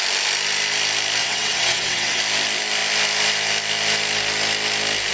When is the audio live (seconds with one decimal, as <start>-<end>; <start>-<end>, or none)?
0.0-1.2; 2.2-5.1